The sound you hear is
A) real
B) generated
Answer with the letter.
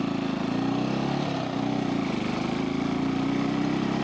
A